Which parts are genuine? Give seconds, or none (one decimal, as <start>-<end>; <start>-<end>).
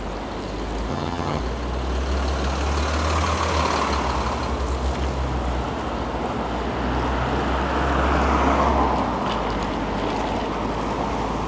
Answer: 0.0-0.9; 1.4-11.5